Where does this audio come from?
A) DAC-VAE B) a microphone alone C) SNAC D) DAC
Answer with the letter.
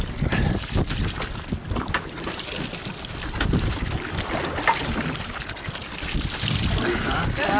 B